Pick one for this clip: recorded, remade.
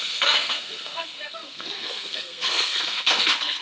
remade